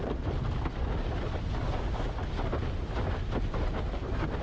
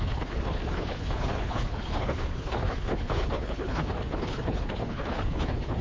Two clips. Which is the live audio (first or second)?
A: first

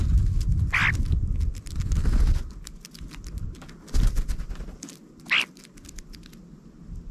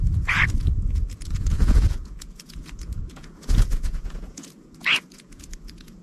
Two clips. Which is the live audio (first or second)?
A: first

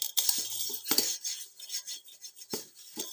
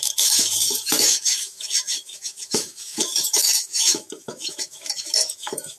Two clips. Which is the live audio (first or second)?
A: first